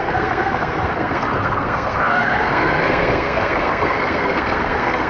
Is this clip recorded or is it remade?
remade